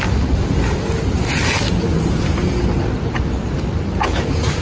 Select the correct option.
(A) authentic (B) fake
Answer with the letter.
A